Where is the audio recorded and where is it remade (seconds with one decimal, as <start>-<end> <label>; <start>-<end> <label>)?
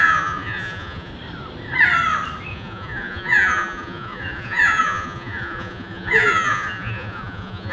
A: 0.0-1.1 remade; 1.1-2.5 recorded; 2.5-7.7 remade